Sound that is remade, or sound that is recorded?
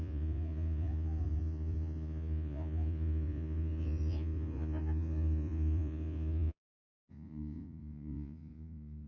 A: remade